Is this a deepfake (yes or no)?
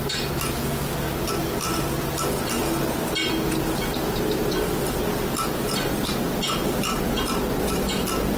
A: no